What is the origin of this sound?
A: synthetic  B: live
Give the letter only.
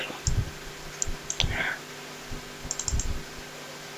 B